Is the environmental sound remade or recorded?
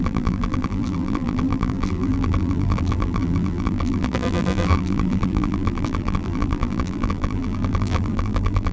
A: remade